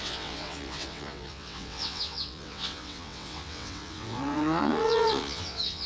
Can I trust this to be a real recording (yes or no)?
no